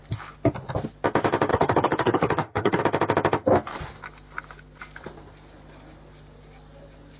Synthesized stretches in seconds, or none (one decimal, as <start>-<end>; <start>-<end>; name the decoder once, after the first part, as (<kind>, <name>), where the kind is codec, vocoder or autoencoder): 1.5-2.8 (codec, SNAC)